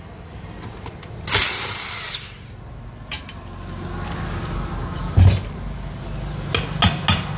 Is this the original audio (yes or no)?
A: yes